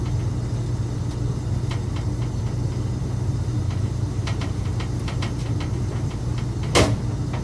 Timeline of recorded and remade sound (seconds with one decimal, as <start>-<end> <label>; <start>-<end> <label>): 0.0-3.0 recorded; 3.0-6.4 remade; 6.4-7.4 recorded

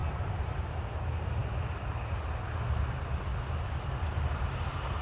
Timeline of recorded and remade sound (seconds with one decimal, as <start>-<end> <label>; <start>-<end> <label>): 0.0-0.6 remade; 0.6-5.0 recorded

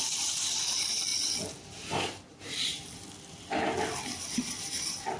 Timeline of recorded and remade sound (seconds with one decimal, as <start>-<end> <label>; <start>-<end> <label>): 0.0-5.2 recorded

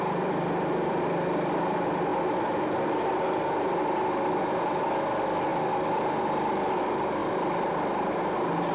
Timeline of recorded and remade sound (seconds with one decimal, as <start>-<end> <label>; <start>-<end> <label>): 0.0-2.1 remade; 2.1-4.5 recorded; 4.5-7.2 remade; 7.2-8.2 recorded; 8.2-8.7 remade

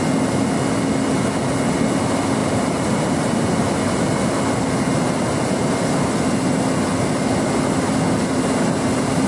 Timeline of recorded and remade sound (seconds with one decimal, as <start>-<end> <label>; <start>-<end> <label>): 0.0-2.4 recorded; 2.4-4.0 remade; 4.0-9.3 recorded